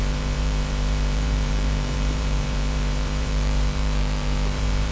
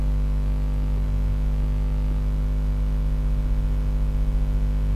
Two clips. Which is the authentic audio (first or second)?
second